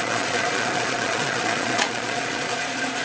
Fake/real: fake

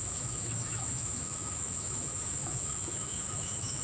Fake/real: fake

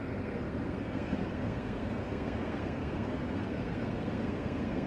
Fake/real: fake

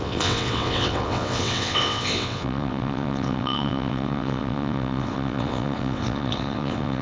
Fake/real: fake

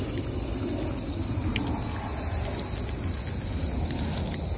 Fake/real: real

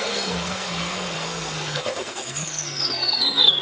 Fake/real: fake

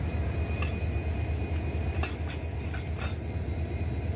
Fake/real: real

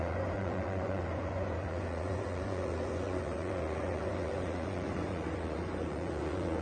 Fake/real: fake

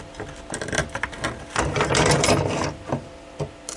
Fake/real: real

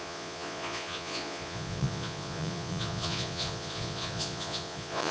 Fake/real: fake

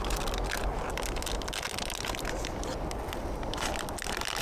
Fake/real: real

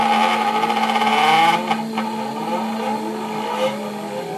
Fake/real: real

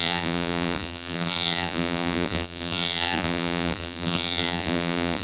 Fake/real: fake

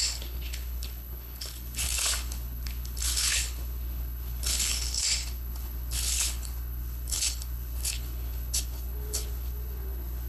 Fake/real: fake